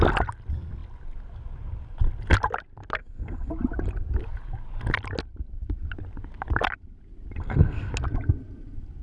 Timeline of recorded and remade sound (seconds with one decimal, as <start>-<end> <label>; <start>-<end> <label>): 0.0-3.0 recorded; 3.0-3.5 remade; 3.5-7.4 recorded; 7.4-7.9 remade; 7.9-9.0 recorded